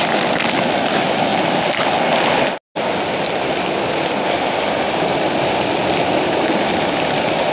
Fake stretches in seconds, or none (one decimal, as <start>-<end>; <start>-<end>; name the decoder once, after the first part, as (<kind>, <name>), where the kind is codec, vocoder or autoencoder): none